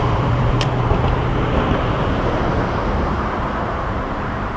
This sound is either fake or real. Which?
fake